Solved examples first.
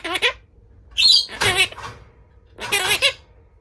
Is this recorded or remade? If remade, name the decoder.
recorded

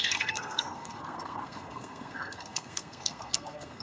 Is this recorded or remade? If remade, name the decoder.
remade, codec, SNAC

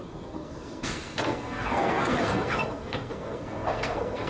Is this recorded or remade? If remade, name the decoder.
remade, codec, SNAC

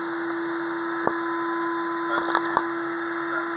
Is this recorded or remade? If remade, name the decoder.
recorded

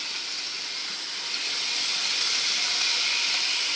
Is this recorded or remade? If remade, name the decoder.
recorded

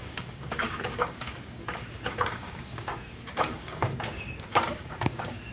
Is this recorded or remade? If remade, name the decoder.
remade, codec, DAC